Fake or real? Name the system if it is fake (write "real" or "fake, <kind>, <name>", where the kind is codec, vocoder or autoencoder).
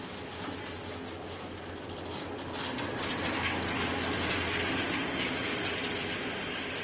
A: real